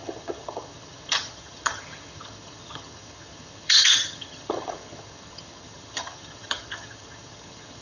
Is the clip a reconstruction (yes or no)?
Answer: yes